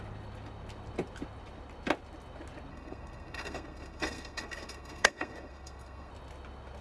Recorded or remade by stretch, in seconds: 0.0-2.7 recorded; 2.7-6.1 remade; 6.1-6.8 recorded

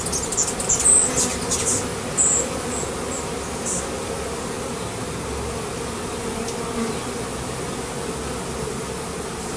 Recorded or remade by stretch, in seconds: 0.0-9.6 recorded

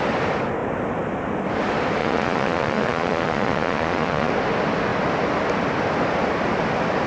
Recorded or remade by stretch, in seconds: 0.0-2.0 recorded; 2.0-4.3 remade; 4.3-7.1 recorded

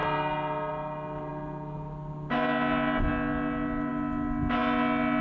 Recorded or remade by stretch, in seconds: 0.0-5.2 recorded

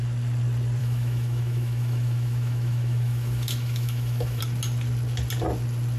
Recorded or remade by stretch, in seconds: 0.0-0.8 recorded; 0.8-4.4 remade; 4.4-6.0 recorded

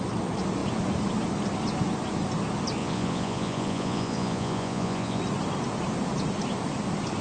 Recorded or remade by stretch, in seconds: 0.0-2.8 recorded; 2.8-5.2 remade; 5.2-7.2 recorded

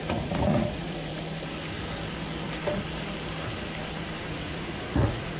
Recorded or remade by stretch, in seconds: 0.0-1.1 remade; 1.1-4.3 recorded; 4.3-5.4 remade